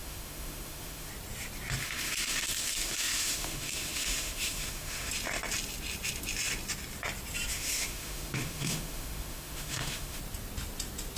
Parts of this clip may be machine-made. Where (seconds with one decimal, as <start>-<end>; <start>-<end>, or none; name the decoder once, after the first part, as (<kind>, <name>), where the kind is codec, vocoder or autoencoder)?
0.0-1.1 (autoencoder, DAC-VAE); 1.8-5.1; 7.5-10.2